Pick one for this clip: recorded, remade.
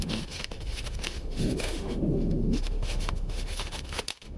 remade